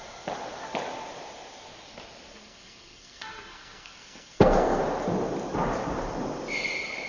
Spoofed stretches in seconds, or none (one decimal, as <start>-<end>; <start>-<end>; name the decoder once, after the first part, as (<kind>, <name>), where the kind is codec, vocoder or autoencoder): 2.3-4.8 (codec, SNAC)